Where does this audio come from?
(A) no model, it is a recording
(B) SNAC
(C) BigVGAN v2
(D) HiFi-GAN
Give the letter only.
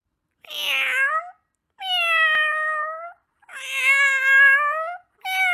A